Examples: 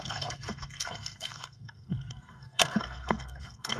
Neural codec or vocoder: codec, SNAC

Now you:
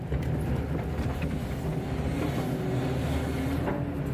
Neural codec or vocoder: none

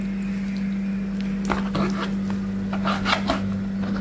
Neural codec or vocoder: none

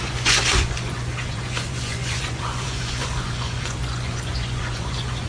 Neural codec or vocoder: vocoder, Vocos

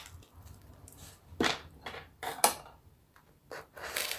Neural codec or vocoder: none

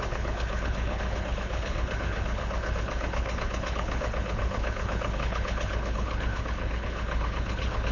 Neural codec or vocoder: codec, HILCodec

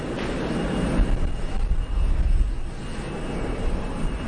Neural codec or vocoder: none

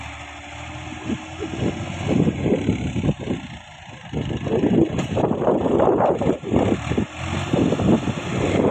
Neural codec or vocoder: none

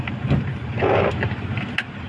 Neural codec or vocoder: none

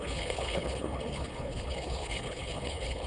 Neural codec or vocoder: codec, HILCodec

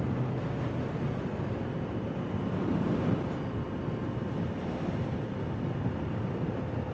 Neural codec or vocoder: none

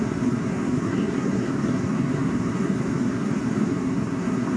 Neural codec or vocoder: codec, SNAC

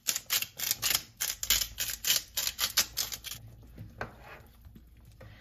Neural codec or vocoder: none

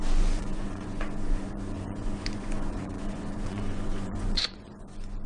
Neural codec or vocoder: vocoder, Vocos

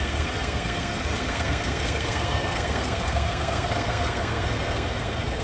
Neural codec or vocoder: codec, SNAC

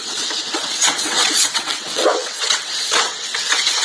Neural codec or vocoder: vocoder, WaveNeXt